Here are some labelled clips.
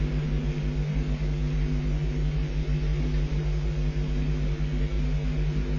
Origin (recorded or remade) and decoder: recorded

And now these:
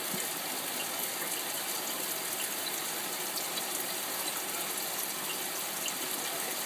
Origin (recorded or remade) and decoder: recorded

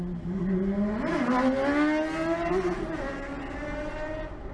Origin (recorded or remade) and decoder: recorded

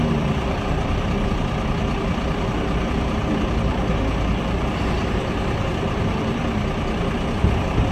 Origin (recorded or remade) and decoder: recorded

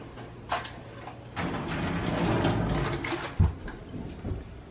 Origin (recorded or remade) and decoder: recorded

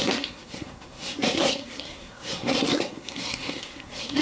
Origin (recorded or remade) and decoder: remade, codec, SNAC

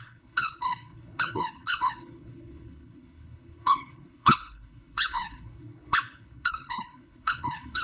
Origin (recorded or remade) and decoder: remade, codec, HILCodec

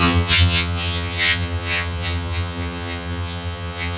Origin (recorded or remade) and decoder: remade, vocoder, HiFi-GAN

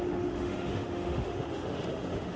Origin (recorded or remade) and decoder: remade, autoencoder, DAC-VAE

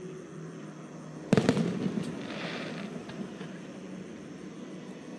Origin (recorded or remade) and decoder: recorded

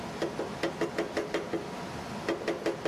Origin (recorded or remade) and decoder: recorded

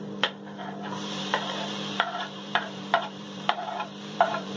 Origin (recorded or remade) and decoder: remade, vocoder, BigVGAN v2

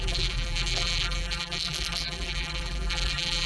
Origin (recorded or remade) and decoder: remade, vocoder, BigVGAN v2